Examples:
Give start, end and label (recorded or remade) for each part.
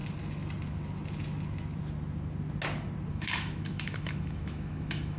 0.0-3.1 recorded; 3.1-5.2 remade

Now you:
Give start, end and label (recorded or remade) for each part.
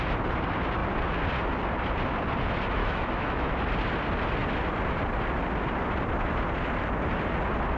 0.0-2.8 recorded; 2.8-3.5 remade; 3.5-7.8 recorded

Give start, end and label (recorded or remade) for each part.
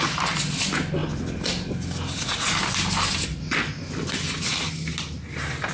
0.0-5.7 recorded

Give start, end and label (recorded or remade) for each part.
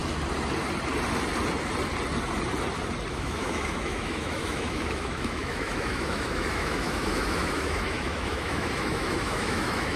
0.0-3.1 recorded; 3.1-10.0 remade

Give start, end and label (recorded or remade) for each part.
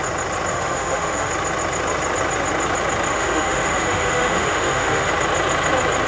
0.0-0.5 recorded; 0.5-1.3 remade; 1.3-3.1 recorded; 3.1-5.1 remade; 5.1-6.1 recorded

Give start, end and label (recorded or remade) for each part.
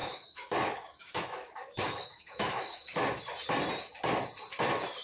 0.0-3.0 remade; 3.0-5.0 recorded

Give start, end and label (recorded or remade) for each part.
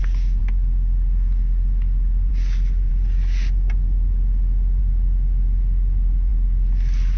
0.0-7.2 recorded